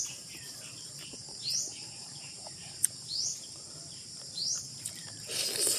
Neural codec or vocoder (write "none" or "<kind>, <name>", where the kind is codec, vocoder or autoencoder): vocoder, BigVGAN v2